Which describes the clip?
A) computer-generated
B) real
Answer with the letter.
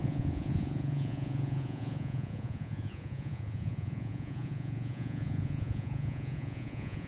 A